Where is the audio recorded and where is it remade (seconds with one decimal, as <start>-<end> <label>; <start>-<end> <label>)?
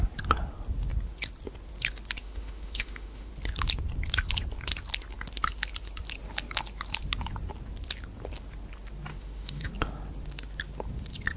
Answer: 0.0-2.2 recorded; 2.2-3.3 remade; 3.3-9.1 recorded; 9.1-9.7 remade; 9.7-11.4 recorded